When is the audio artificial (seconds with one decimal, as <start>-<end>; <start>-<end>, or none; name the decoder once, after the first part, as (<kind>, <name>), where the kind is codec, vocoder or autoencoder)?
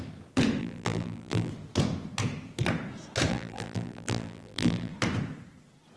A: 0.6-1.5 (vocoder, BigVGAN v2); 3.3-4.9